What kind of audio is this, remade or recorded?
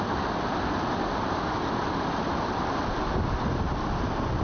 recorded